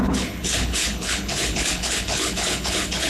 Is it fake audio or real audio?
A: fake